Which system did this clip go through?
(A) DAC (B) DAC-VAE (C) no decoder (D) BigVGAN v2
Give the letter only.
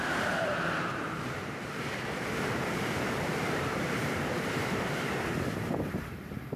D